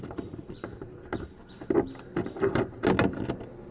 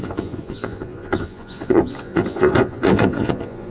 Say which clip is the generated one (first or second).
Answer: second